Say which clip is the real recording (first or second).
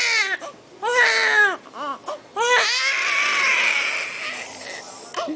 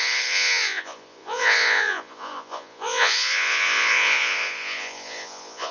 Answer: first